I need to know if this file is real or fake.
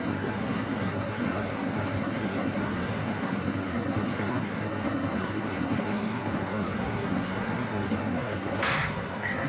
fake